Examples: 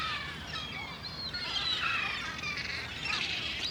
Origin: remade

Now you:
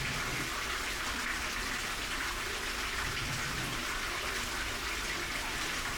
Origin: recorded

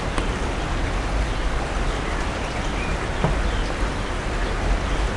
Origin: recorded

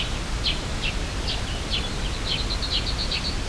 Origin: recorded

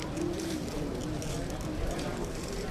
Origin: recorded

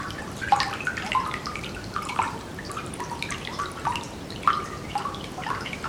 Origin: remade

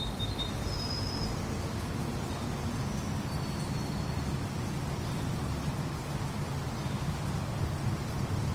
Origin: recorded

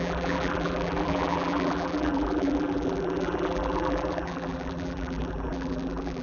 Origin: remade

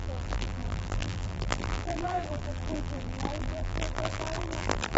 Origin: remade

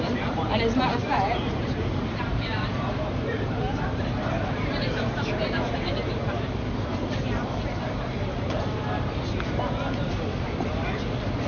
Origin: remade